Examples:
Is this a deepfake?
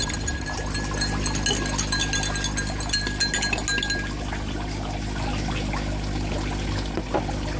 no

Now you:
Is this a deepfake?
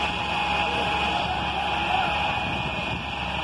no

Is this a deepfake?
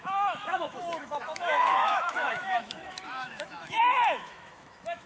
yes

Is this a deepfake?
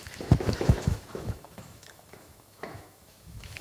yes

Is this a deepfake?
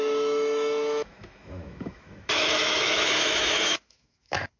yes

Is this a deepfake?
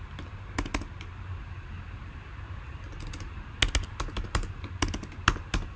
no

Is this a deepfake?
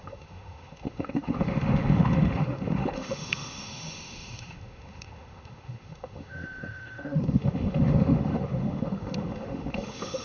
yes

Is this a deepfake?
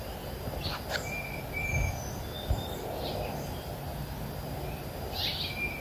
no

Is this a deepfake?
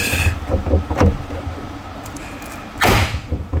no